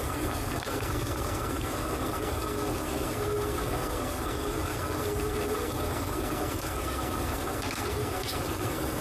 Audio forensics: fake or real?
fake